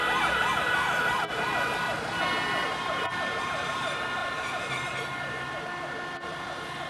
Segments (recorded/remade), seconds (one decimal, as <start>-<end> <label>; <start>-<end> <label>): 0.0-2.6 recorded; 2.6-3.4 remade; 3.4-4.2 recorded; 4.2-5.6 remade; 5.6-6.9 recorded